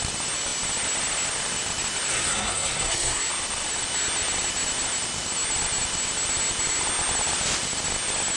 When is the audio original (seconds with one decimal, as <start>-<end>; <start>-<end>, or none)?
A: 0.0-2.1; 3.2-8.4